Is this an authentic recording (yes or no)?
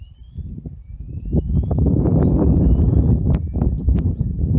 no